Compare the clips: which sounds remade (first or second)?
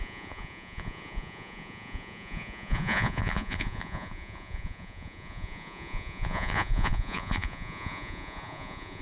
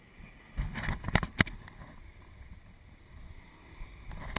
first